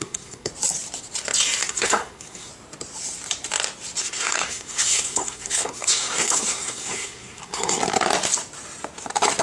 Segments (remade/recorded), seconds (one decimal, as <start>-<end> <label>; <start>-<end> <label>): 0.0-0.5 remade; 0.5-1.6 recorded; 1.6-2.5 remade; 2.5-4.0 recorded; 4.0-7.8 remade; 7.8-9.4 recorded